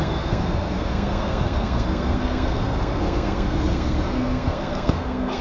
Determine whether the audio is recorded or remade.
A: remade